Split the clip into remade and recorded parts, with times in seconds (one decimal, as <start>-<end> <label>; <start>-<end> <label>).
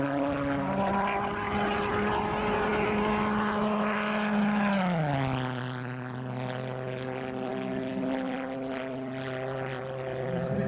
0.0-10.7 recorded